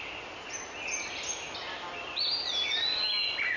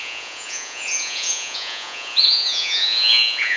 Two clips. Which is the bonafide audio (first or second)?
first